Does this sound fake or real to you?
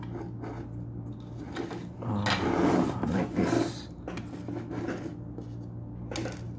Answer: real